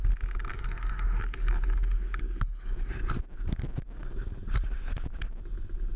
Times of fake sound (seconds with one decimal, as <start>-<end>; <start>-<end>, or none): 0.5-2.9